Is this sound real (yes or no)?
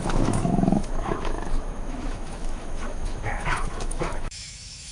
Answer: no